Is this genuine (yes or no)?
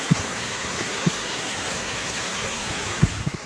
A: no